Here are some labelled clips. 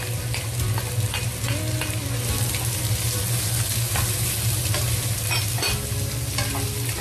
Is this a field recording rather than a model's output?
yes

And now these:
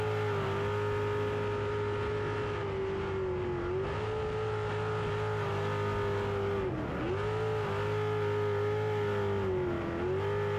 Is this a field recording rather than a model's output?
yes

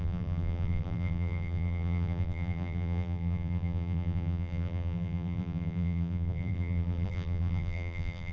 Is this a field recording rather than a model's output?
no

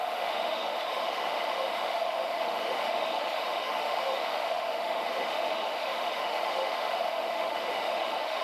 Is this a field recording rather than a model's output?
no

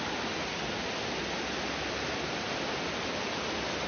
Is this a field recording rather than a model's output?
yes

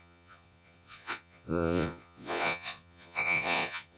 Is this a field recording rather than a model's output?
no